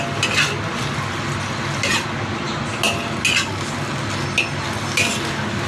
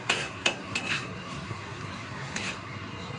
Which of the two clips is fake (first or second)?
second